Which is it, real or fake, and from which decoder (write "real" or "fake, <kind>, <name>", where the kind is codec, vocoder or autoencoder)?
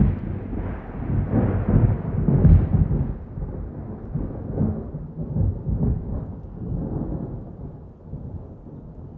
real